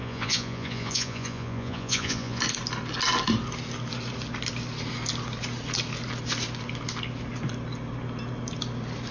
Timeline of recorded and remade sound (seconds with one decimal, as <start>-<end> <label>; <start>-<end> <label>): 0.0-2.4 remade; 2.4-9.1 recorded